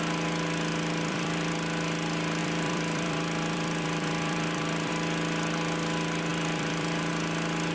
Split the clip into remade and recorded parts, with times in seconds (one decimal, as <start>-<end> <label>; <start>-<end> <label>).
0.0-0.7 recorded; 0.7-1.5 remade; 1.5-2.4 recorded; 2.4-4.9 remade; 4.9-6.3 recorded; 6.3-7.1 remade; 7.1-7.7 recorded